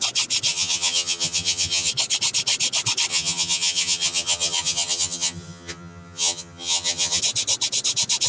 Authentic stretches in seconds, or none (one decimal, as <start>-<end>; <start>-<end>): 0.0-0.5; 1.9-3.1; 7.2-8.3